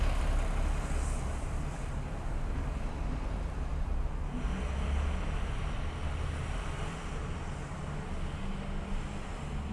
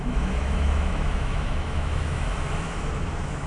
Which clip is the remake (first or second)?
second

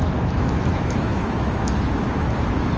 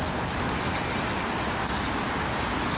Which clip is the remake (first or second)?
first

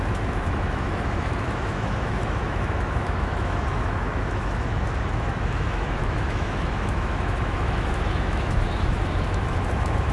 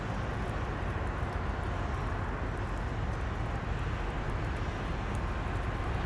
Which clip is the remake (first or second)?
first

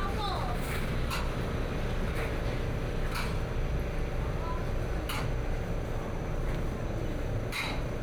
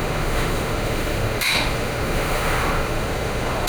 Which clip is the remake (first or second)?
second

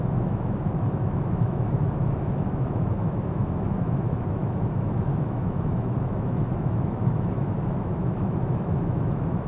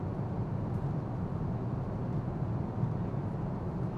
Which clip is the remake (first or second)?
first